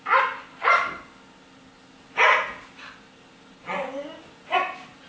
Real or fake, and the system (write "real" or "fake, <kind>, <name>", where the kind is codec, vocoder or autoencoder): real